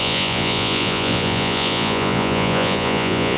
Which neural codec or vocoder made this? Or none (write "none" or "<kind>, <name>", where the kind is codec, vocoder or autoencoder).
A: vocoder, Vocos